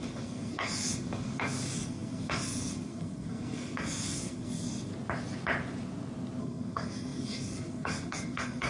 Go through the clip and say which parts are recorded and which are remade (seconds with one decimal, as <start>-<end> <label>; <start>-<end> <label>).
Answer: 0.0-4.9 remade; 4.9-6.4 recorded; 6.4-8.7 remade